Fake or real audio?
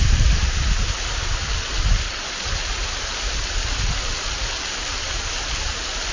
real